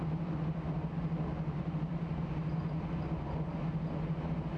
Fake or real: real